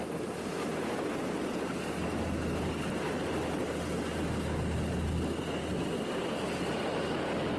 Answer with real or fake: real